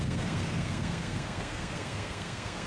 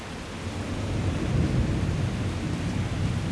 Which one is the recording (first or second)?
second